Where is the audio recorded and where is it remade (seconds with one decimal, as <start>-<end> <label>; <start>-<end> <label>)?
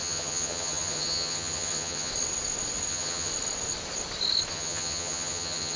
0.0-2.1 remade; 2.1-2.9 recorded; 2.9-3.3 remade; 3.3-4.5 recorded; 4.5-5.8 remade